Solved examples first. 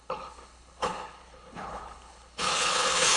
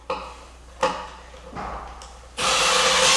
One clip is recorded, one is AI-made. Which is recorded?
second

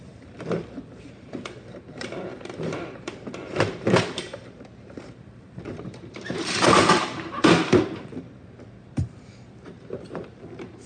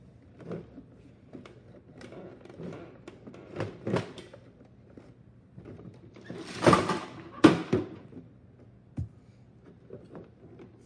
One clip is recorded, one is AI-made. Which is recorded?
second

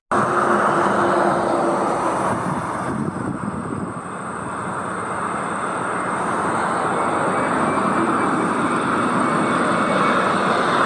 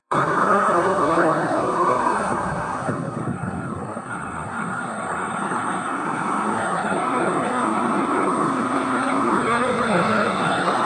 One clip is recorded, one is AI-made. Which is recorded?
first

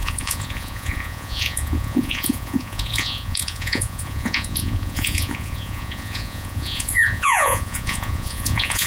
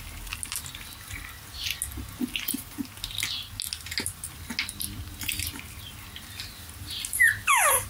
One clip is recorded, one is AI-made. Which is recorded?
second